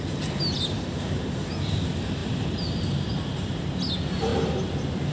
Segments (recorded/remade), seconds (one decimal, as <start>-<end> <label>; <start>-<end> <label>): 0.0-5.1 recorded